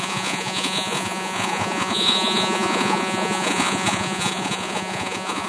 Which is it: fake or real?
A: fake